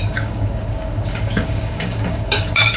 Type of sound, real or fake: fake